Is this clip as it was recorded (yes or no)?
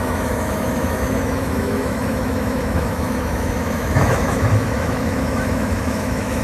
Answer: no